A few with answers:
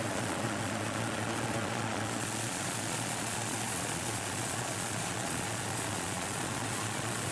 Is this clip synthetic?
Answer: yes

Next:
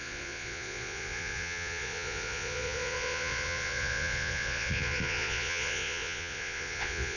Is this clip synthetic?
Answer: yes